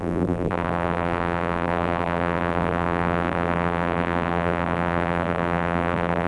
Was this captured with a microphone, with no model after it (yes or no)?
no